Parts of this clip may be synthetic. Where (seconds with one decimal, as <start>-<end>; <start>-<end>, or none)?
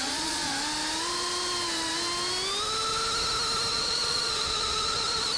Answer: 0.0-0.5; 3.7-5.4